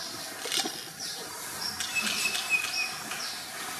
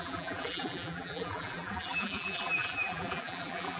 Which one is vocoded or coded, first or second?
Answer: second